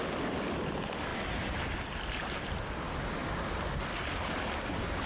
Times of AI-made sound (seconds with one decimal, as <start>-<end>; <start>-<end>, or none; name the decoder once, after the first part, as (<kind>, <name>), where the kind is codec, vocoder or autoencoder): none